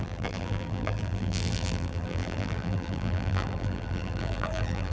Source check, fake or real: fake